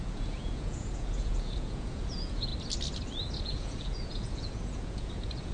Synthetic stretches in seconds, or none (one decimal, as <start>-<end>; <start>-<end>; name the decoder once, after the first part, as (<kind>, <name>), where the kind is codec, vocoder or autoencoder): 0.0-2.5 (vocoder, Vocos); 3.4-5.5

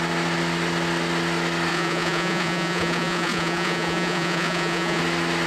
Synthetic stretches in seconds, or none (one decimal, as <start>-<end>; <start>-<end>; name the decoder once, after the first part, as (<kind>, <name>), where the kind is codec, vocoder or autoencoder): 1.7-5.0 (vocoder, Vocos)

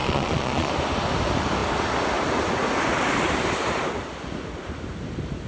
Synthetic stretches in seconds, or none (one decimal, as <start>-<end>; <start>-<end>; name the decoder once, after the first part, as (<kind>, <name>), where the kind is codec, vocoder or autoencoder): 0.0-0.7 (vocoder, Vocos)